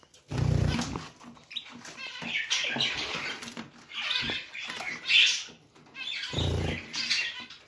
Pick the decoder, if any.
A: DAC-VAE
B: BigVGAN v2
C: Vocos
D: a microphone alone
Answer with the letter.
B